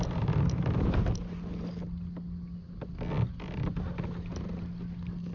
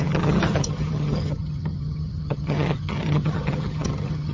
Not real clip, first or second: second